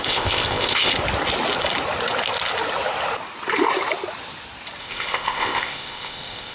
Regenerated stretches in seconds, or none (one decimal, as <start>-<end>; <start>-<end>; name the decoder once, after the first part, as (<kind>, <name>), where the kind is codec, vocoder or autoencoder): 0.0-0.9 (codec, ZipCodec); 4.8-6.5